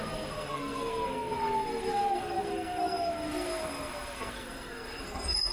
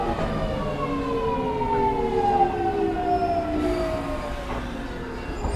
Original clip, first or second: second